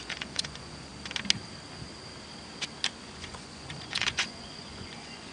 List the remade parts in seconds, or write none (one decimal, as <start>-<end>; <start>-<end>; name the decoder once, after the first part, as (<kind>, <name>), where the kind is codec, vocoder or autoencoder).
0.0-0.9 (vocoder, Vocos); 3.0-5.3